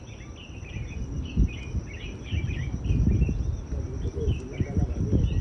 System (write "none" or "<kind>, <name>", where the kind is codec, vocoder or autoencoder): none